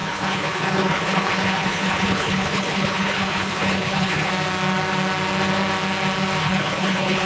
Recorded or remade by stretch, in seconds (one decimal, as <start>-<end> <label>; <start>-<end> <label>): 0.0-4.3 remade; 4.3-6.4 recorded; 6.4-7.3 remade